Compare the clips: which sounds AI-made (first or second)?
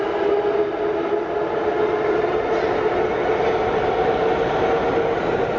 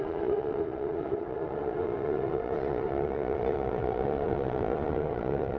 second